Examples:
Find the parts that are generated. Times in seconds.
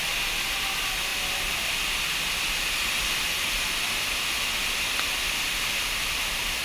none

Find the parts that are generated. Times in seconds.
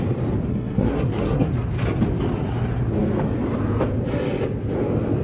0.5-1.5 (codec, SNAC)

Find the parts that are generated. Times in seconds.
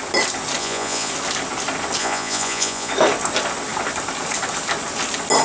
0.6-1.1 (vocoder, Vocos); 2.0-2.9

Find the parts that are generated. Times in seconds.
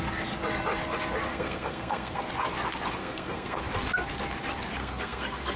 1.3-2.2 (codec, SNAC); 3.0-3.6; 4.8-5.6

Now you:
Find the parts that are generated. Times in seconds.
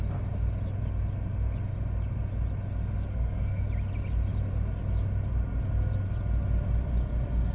3.1-3.6 (codec, SNAC)